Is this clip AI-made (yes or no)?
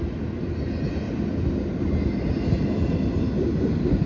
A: no